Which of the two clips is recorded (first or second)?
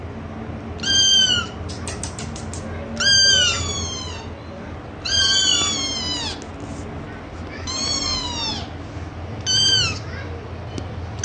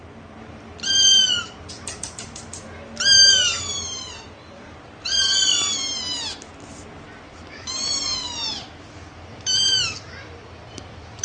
first